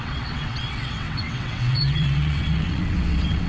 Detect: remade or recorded remade